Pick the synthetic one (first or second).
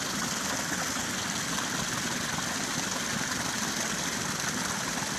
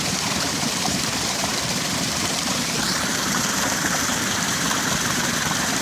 second